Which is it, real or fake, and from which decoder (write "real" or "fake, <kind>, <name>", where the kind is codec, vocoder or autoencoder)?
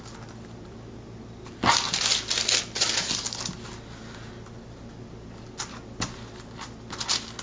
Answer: real